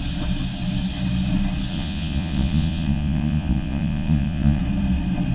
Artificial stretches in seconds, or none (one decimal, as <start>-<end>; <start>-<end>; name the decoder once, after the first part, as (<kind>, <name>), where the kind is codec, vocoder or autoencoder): 1.7-4.6 (vocoder, Vocos)

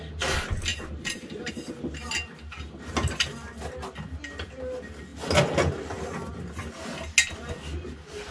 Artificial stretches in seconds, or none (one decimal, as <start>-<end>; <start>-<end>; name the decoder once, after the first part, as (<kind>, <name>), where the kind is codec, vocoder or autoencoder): 0.7-1.5 (vocoder, BigVGAN v2)

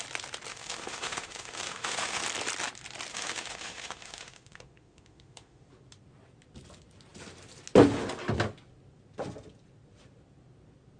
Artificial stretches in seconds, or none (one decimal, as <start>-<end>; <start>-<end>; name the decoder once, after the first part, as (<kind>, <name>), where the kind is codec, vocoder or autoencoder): 0.5-2.2 (autoencoder, DAC-VAE); 3.1-5.6